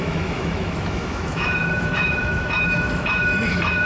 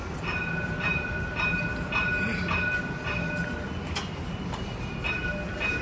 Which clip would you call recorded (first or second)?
second